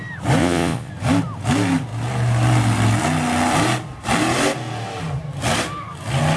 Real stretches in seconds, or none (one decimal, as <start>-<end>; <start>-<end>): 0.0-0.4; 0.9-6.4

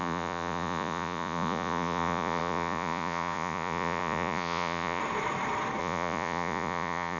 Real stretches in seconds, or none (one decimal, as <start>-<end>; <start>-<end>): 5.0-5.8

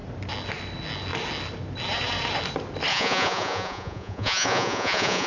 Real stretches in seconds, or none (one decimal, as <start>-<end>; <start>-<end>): 0.0-2.9

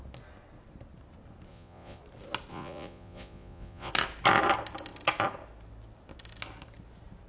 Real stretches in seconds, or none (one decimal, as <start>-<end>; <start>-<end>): 0.0-1.5; 2.0-2.5; 3.9-7.3

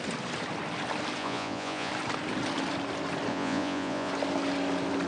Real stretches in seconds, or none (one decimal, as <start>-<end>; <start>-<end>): 0.0-1.2; 1.9-3.3; 4.1-5.1

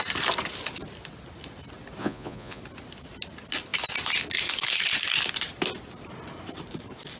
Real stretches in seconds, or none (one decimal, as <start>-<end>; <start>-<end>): 0.0-2.0; 2.6-7.2

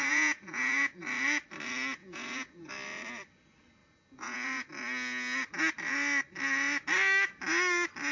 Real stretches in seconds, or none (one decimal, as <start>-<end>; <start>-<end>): 1.0-2.0; 2.7-3.8; 4.7-8.1

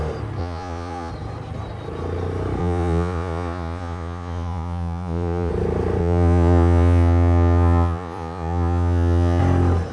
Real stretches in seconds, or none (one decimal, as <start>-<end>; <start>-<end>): 0.0-0.4; 1.1-2.6; 5.5-6.0; 9.4-9.9